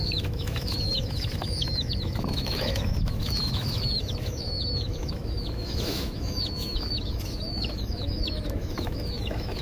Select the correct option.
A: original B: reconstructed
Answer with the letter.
B